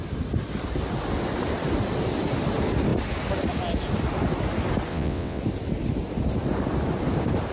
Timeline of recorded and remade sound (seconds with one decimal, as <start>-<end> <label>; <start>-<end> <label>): 0.0-4.9 recorded; 4.9-5.4 remade; 5.4-7.5 recorded